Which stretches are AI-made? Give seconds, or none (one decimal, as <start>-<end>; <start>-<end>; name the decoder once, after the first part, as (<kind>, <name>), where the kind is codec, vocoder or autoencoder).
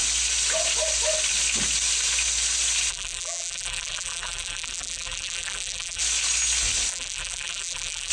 2.9-6.0 (vocoder, BigVGAN v2); 6.9-8.1